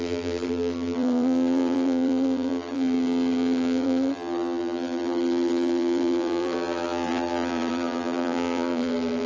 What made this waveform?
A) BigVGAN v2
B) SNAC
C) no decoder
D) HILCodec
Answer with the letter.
A